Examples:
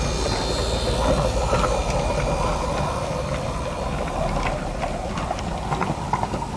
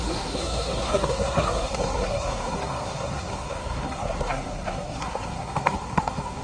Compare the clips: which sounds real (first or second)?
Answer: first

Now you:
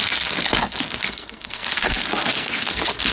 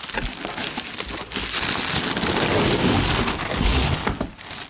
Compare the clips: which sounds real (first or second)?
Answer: second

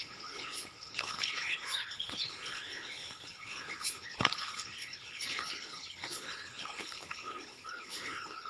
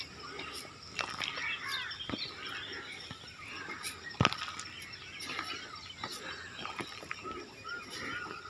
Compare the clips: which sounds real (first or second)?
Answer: second